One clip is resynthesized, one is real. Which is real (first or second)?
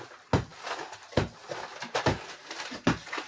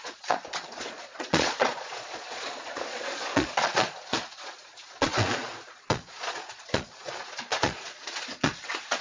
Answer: first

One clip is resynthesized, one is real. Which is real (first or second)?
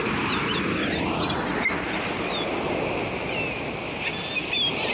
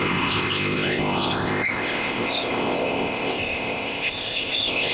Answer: first